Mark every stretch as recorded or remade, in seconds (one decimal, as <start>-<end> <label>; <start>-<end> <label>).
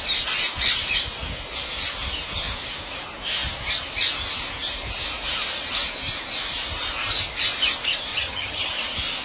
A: 0.0-8.1 recorded; 8.1-8.7 remade; 8.7-9.2 recorded